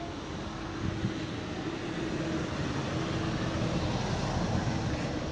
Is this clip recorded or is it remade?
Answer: recorded